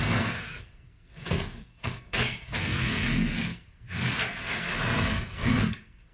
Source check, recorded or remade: remade